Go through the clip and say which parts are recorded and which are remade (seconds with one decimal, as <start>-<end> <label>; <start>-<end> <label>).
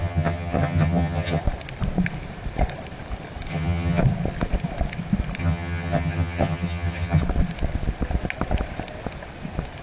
0.0-1.4 remade; 1.4-3.5 recorded; 3.5-4.0 remade; 4.0-5.4 recorded; 5.4-7.2 remade; 7.2-9.8 recorded